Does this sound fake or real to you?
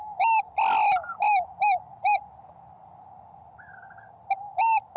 real